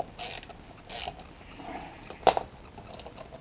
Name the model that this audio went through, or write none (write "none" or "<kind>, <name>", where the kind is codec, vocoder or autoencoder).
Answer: none